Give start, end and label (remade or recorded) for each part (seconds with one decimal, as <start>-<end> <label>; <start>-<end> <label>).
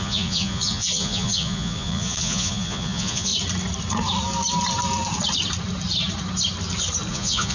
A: 0.0-3.3 remade; 3.3-7.1 recorded; 7.1-7.5 remade